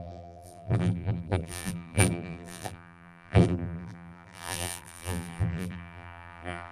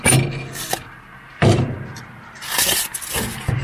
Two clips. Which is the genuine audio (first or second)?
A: second